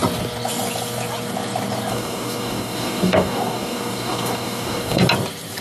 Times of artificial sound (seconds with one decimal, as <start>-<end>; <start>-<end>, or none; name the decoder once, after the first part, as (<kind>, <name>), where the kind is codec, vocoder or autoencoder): 1.9-5.0 (codec, DAC)